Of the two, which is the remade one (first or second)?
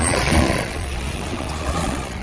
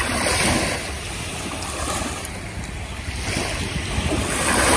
first